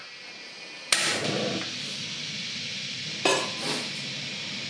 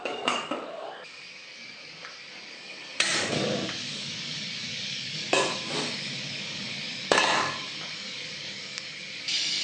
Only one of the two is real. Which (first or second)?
first